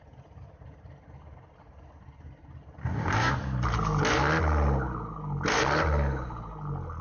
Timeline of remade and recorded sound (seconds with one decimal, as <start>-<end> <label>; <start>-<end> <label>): 0.0-2.8 recorded; 2.8-3.3 remade; 3.3-7.0 recorded

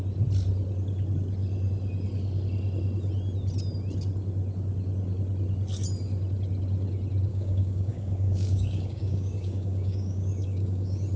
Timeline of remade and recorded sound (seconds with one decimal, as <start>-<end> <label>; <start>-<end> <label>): 0.0-7.3 recorded; 7.3-11.2 remade

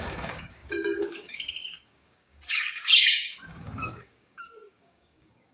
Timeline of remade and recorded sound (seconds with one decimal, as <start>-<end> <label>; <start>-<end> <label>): 0.0-5.5 remade

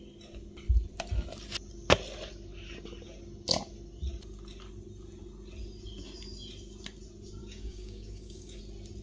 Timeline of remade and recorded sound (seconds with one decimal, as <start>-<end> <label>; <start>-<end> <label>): 0.0-7.4 recorded; 7.4-8.6 remade; 8.6-9.0 recorded

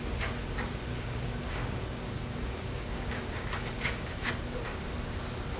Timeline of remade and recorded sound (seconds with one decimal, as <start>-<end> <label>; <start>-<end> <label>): 0.0-0.9 recorded; 0.9-4.3 remade; 4.3-5.6 recorded

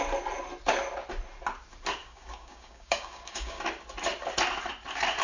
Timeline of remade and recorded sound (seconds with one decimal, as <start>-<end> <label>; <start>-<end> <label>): 0.0-2.0 recorded; 2.0-3.6 remade; 3.6-5.2 recorded

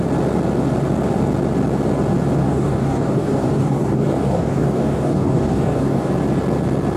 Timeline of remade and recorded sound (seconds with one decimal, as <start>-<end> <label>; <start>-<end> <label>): 0.0-2.4 recorded; 2.4-6.1 remade; 6.1-7.0 recorded